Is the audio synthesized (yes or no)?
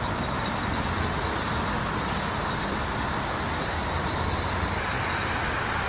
no